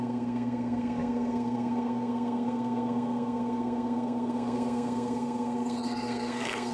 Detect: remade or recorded remade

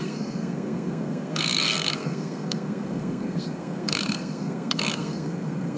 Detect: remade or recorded remade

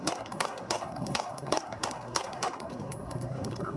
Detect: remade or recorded remade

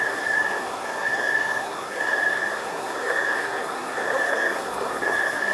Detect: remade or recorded remade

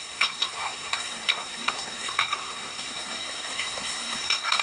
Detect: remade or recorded remade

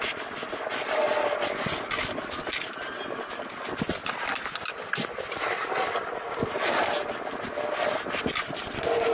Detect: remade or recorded recorded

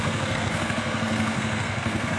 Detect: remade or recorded remade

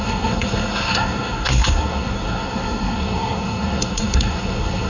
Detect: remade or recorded remade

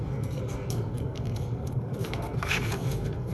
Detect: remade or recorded remade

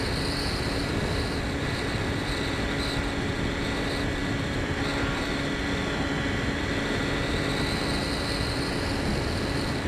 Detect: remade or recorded recorded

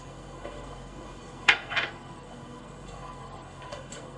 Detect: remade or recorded remade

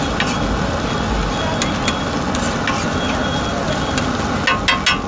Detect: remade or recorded recorded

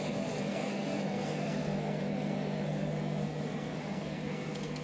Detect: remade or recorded remade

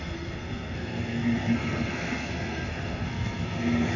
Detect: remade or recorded remade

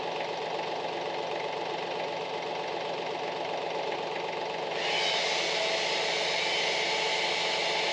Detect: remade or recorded recorded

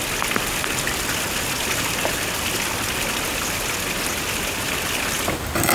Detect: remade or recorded recorded